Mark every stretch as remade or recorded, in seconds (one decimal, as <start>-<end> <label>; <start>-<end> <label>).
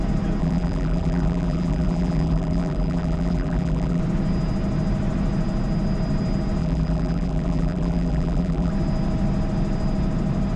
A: 0.0-0.4 recorded; 0.4-4.0 remade; 4.0-6.6 recorded; 6.6-8.7 remade; 8.7-10.6 recorded